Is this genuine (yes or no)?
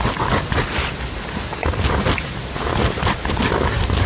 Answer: yes